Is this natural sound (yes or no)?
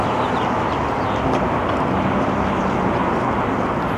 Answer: yes